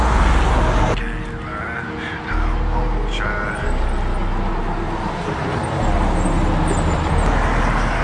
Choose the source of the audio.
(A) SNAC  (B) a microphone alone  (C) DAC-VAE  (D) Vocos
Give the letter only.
B